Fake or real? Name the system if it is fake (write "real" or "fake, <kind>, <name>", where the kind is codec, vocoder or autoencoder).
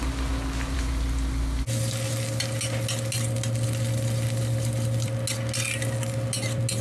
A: real